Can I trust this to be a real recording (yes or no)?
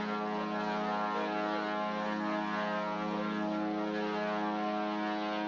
yes